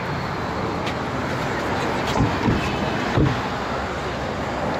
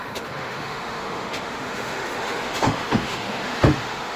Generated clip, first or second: second